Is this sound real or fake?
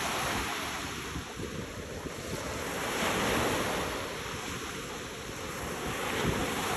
real